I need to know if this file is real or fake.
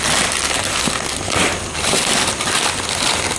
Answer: real